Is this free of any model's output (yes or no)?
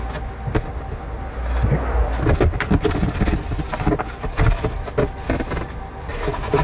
yes